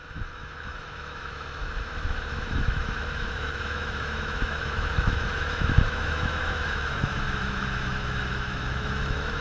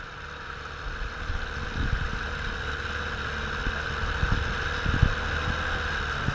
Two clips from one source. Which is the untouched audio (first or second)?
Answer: second